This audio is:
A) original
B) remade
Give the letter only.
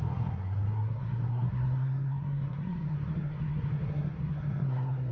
B